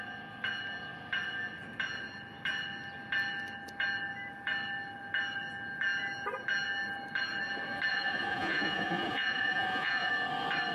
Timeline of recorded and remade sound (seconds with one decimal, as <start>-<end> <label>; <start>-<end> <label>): 0.0-7.9 recorded; 7.9-10.1 remade; 10.1-10.7 recorded